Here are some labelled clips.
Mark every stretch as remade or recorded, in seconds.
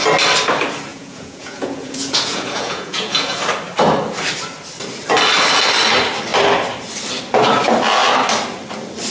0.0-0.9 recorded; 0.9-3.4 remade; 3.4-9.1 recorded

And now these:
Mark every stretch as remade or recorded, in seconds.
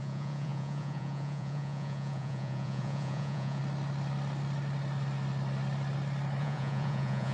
0.0-3.6 remade; 3.6-6.4 recorded; 6.4-7.3 remade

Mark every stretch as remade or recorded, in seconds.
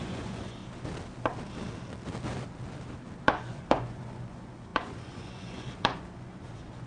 0.0-0.6 remade; 0.6-3.2 recorded; 3.2-6.9 remade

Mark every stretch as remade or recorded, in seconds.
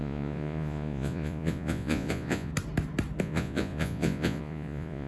0.0-2.5 remade; 2.5-3.2 recorded; 3.2-5.1 remade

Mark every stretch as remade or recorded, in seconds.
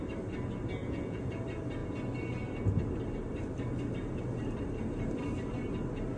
0.0-0.8 recorded; 0.8-1.4 remade; 1.4-6.2 recorded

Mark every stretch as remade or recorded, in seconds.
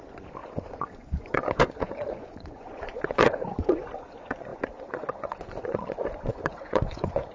0.0-7.3 remade